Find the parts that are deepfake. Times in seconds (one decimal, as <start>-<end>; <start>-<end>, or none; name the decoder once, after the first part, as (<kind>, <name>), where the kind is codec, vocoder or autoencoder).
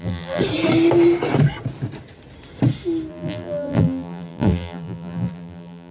0.0-0.4 (vocoder, BigVGAN v2); 3.1-5.9